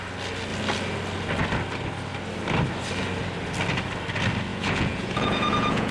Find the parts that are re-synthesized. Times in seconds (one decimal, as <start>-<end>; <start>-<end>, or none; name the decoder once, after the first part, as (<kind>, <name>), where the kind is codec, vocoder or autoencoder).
4.5-5.9 (vocoder, Vocos)